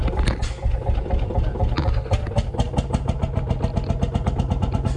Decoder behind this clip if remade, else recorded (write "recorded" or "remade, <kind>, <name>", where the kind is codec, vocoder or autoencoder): recorded